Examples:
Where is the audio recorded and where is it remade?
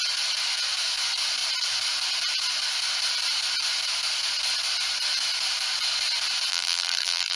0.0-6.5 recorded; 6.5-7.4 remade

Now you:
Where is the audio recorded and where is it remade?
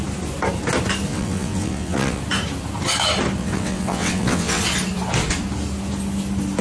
0.0-1.1 recorded; 1.1-2.2 remade; 2.2-3.4 recorded; 3.4-4.6 remade; 4.6-6.6 recorded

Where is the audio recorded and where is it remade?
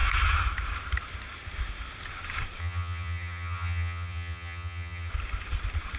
0.0-2.6 recorded; 2.6-5.1 remade; 5.1-6.0 recorded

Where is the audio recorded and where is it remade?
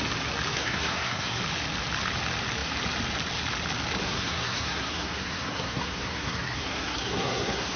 0.0-0.5 recorded; 0.5-1.4 remade; 1.4-4.0 recorded; 4.0-7.8 remade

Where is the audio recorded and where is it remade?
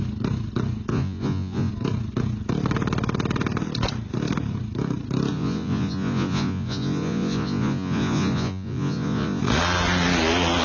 0.0-0.9 recorded; 0.9-1.7 remade; 1.7-5.3 recorded; 5.3-9.4 remade; 9.4-10.6 recorded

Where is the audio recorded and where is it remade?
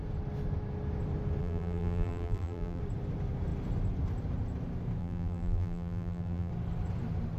0.0-1.4 recorded; 1.4-2.8 remade; 2.8-5.0 recorded; 5.0-6.5 remade; 6.5-7.4 recorded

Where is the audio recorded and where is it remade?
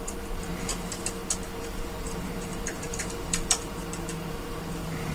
0.0-0.7 remade; 0.7-1.6 recorded; 1.6-3.8 remade; 3.8-4.3 recorded; 4.3-5.1 remade